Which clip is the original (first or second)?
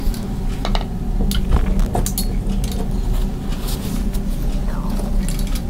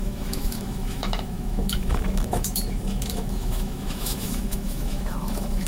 first